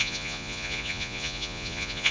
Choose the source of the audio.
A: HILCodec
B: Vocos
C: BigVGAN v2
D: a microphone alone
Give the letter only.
B